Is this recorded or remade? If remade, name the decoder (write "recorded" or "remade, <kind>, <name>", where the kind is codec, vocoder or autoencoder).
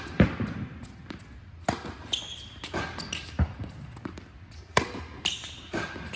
recorded